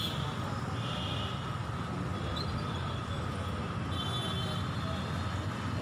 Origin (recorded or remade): recorded